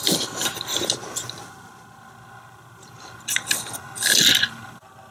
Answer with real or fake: real